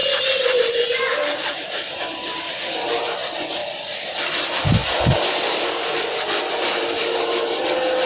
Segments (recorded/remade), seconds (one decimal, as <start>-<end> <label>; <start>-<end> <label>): 0.0-3.6 remade; 3.6-4.1 recorded; 4.1-4.8 remade; 4.8-6.6 recorded; 6.6-8.1 remade